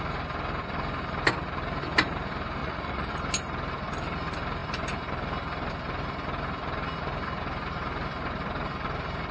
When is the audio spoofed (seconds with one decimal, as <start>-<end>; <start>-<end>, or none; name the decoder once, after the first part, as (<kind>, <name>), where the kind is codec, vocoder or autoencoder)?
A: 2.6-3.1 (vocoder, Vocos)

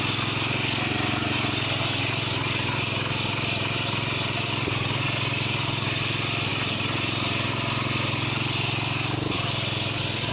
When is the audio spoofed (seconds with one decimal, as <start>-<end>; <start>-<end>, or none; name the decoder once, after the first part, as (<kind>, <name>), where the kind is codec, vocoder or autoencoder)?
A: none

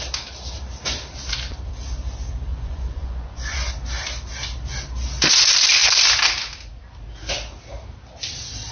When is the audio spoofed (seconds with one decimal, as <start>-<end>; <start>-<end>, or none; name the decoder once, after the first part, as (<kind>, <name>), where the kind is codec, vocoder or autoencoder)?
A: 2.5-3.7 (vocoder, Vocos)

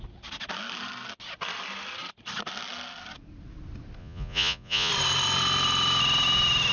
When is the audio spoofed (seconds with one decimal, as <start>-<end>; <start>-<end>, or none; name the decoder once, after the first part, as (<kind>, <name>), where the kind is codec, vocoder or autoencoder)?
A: 4.0-4.9 (vocoder, Vocos)

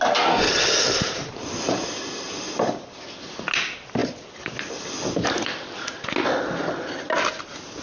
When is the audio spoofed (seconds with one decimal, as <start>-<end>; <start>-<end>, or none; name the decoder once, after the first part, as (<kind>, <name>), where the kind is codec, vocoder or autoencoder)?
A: none

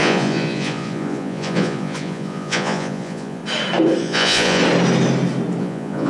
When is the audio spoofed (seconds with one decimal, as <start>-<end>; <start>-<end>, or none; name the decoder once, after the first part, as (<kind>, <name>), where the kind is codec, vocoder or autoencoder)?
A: 0.0-3.4 (vocoder, Vocos); 4.0-4.6; 5.6-6.1